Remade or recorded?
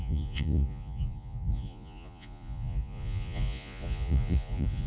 remade